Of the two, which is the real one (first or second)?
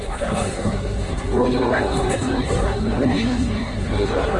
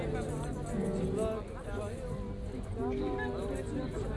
second